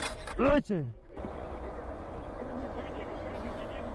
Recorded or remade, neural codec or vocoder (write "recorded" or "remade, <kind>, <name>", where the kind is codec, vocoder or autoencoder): remade, vocoder, Vocos